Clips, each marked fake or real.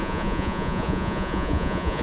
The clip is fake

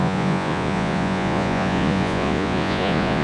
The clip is fake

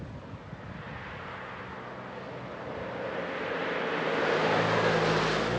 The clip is real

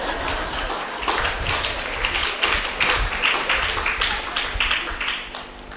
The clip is real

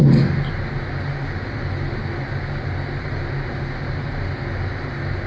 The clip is real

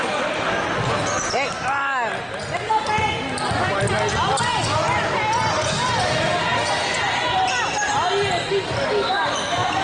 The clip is real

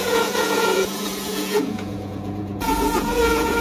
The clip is fake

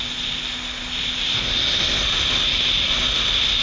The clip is real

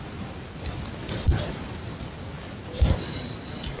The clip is real